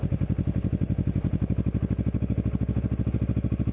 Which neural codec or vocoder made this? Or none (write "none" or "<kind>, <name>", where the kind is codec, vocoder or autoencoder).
none